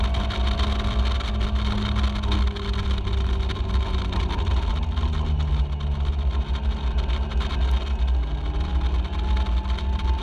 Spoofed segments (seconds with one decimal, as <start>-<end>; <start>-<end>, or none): none